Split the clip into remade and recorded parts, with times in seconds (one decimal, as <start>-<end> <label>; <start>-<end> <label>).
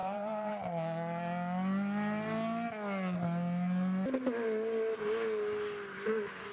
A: 0.0-0.5 remade; 0.5-6.5 recorded